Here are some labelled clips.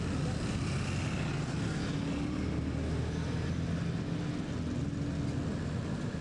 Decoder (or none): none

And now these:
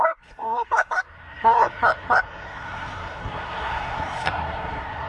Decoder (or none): codec, SNAC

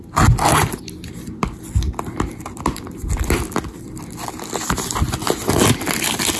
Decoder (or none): none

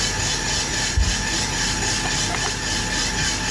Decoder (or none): none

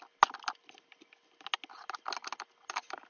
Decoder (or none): none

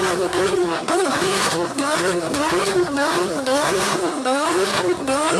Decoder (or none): codec, SNAC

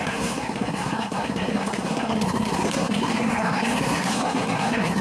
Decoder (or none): codec, SNAC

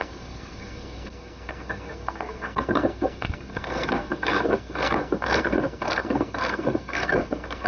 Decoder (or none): codec, SNAC